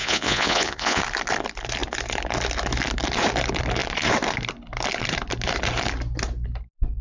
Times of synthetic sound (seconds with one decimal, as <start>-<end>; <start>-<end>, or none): 0.0-1.0